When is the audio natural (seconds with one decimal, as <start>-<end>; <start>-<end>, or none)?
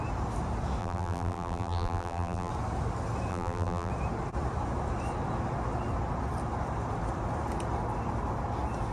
0.0-0.8; 2.5-3.3; 3.9-8.9